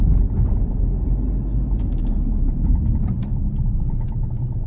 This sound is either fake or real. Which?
fake